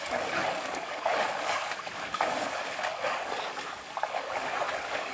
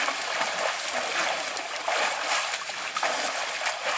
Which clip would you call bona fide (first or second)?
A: second